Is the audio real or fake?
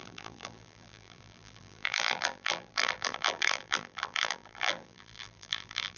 fake